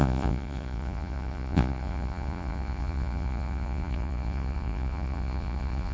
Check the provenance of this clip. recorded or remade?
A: remade